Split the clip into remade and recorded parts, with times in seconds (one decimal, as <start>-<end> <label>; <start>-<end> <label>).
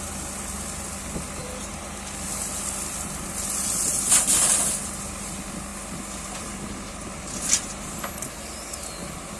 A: 0.0-9.4 recorded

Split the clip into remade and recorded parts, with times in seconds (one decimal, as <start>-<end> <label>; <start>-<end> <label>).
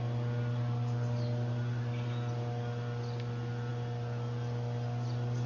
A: 0.0-5.5 recorded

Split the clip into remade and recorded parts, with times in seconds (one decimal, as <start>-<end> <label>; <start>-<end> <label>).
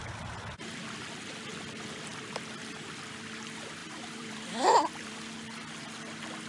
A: 0.0-3.8 recorded; 3.8-5.2 remade; 5.2-6.5 recorded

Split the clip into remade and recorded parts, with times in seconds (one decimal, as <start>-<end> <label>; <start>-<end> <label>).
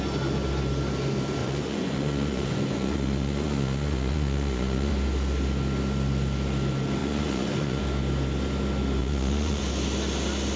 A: 0.0-1.4 recorded; 1.4-4.9 remade; 4.9-7.0 recorded; 7.0-7.8 remade; 7.8-9.0 recorded; 9.0-9.6 remade; 9.6-10.6 recorded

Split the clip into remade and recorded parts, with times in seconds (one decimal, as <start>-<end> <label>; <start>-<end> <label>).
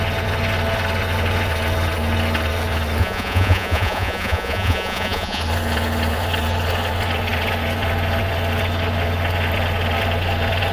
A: 0.0-3.0 recorded; 3.0-5.4 remade; 5.4-10.7 recorded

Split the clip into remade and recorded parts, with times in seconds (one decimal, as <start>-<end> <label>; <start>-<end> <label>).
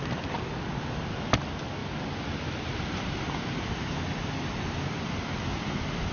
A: 0.0-6.1 recorded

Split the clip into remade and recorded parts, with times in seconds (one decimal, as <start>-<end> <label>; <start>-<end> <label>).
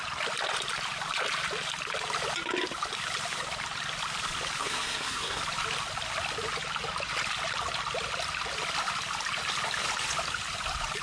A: 0.0-4.6 recorded; 4.6-5.4 remade; 5.4-11.0 recorded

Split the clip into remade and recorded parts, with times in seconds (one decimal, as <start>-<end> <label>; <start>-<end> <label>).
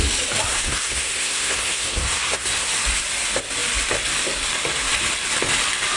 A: 0.0-0.5 recorded; 0.5-2.7 remade; 2.7-6.0 recorded